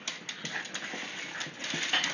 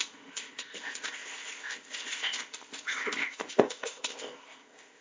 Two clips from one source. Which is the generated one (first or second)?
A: second